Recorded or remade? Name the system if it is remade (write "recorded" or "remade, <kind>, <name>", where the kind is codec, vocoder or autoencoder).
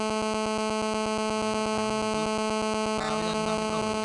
recorded